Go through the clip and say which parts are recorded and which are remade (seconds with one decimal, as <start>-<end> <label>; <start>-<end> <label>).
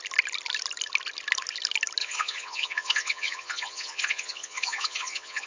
0.0-2.0 recorded; 2.0-5.5 remade